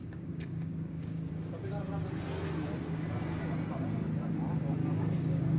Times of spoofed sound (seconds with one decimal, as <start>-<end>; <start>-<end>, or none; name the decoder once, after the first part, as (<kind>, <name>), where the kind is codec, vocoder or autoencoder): 0.0-1.3 (codec, DAC); 4.8-5.6